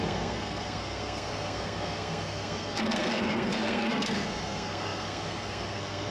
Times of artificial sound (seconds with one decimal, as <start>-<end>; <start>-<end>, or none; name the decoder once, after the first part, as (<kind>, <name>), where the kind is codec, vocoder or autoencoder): 0.0-6.1 (codec, SNAC)